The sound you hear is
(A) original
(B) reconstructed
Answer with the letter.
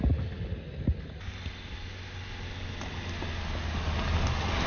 A